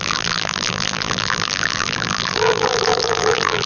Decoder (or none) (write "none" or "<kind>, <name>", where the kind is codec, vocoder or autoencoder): vocoder, BigVGAN v2